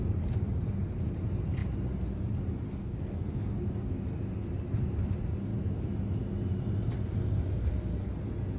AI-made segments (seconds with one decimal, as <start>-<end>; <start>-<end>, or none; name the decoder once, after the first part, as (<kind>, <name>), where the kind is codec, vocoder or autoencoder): 2.8-4.0 (codec, SNAC); 7.6-8.1